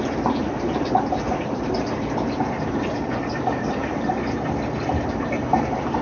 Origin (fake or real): fake